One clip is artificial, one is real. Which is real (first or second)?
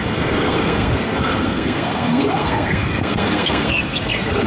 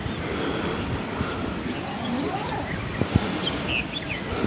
second